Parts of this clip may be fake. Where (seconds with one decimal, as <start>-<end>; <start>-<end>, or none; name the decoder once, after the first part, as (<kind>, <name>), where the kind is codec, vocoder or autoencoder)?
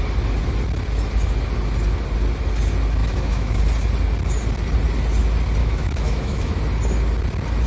3.0-3.6 (autoencoder, DAC-VAE); 5.6-6.6